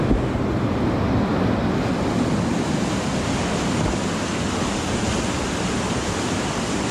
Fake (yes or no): no